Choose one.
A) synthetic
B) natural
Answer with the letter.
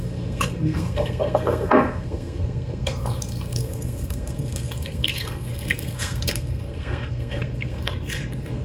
A